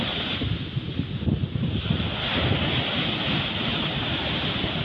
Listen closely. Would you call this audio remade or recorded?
recorded